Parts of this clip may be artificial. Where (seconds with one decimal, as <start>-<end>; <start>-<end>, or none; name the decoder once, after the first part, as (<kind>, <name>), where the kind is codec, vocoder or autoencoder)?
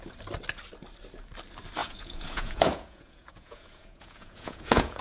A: 1.8-5.0 (vocoder, Vocos)